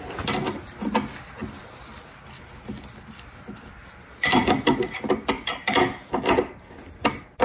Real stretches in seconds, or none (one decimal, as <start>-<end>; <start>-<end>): 0.0-1.4; 5.8-7.4